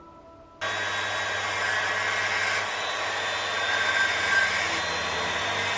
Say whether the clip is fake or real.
real